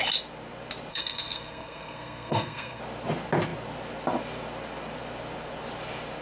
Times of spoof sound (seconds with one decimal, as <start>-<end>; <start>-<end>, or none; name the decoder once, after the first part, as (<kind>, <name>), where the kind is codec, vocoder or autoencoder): 0.9-2.8 (codec, SNAC)